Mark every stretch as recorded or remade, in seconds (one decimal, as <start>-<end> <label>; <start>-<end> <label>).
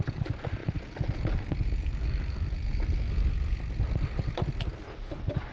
0.0-5.5 recorded